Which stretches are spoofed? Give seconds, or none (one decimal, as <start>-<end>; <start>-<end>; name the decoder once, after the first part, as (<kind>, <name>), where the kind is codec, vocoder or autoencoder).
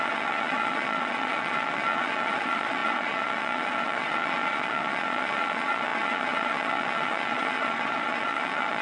0.0-8.8 (vocoder, Vocos)